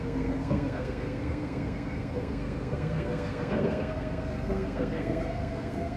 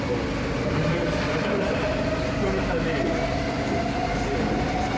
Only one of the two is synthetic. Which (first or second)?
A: first